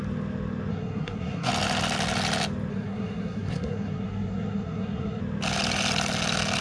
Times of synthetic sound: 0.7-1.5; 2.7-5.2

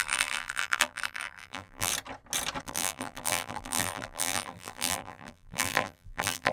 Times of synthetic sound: 0.0-1.9; 2.6-6.5